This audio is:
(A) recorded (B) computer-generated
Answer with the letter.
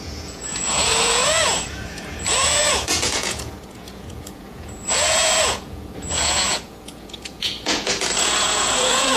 B